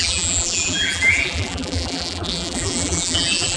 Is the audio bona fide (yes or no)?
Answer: no